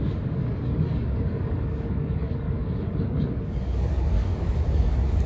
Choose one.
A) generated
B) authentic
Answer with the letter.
A